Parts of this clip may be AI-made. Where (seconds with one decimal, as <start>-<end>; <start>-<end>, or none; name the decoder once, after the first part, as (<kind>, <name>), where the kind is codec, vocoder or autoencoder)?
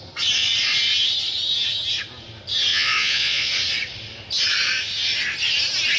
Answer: 2.7-3.5 (vocoder, Vocos)